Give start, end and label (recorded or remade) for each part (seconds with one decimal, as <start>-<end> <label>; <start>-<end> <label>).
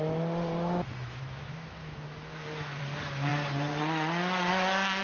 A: 0.0-0.9 recorded; 0.9-2.8 remade; 2.8-5.0 recorded